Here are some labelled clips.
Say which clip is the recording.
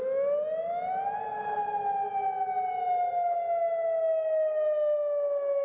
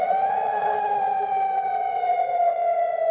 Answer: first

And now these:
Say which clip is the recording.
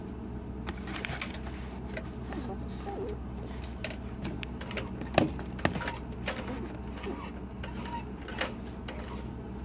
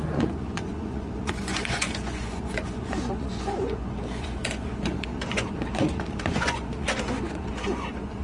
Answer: first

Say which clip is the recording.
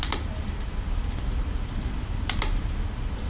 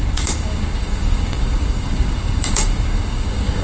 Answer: first